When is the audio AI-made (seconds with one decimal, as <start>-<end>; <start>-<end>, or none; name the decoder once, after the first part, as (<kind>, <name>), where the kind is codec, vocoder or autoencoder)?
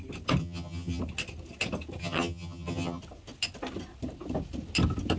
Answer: 0.4-1.0 (vocoder, HiFi-GAN); 2.0-3.0